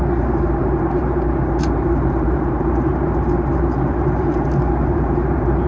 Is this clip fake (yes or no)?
yes